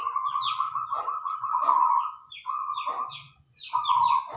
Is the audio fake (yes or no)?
yes